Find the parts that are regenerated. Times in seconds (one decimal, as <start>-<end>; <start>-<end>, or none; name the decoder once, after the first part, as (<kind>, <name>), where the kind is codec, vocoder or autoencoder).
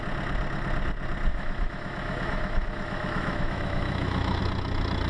1.3-4.4 (autoencoder, DAC-VAE)